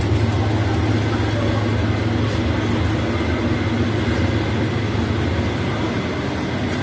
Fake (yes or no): no